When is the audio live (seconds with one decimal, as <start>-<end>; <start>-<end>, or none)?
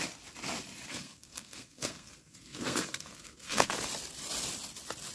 0.0-0.9; 3.7-5.1